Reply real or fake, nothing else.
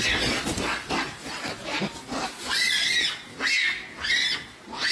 real